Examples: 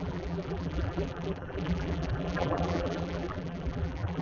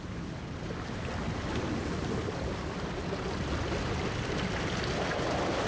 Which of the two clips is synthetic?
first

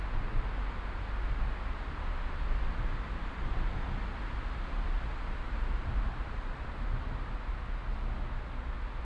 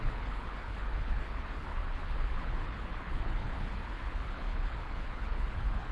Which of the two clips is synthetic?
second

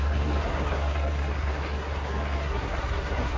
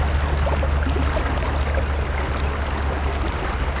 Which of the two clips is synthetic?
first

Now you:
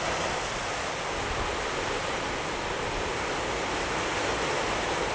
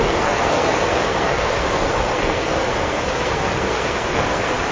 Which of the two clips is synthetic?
second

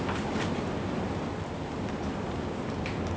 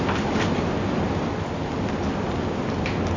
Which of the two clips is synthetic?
first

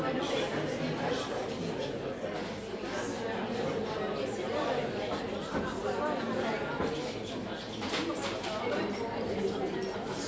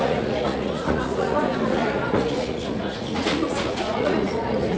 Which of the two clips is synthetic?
second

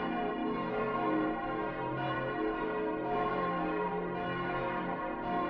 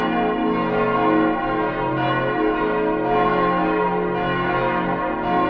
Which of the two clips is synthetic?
first